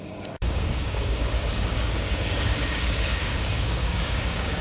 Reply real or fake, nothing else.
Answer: fake